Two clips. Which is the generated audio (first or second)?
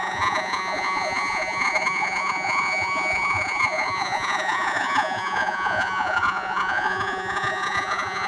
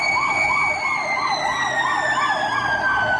first